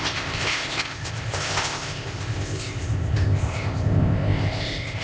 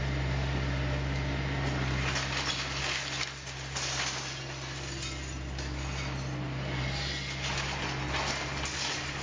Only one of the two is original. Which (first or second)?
second